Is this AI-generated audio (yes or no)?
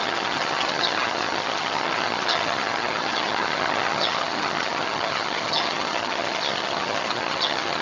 yes